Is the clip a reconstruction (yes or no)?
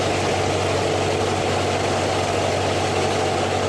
no